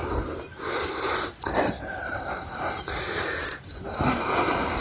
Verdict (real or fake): fake